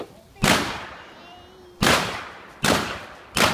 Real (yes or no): no